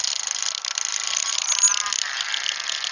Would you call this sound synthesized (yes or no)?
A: no